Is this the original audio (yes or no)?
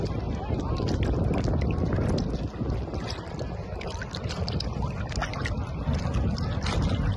yes